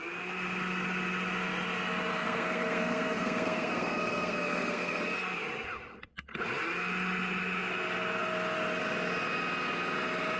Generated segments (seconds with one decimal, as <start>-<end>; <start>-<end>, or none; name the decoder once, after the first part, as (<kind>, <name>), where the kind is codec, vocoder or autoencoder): 2.1-5.0 (codec, SNAC)